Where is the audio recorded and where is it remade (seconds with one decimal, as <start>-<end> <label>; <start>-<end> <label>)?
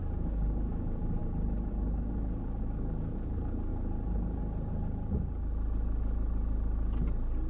0.0-1.2 remade; 1.2-1.7 recorded; 1.7-3.7 remade; 3.7-7.5 recorded